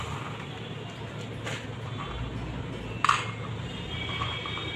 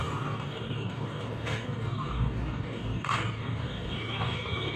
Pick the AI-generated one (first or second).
second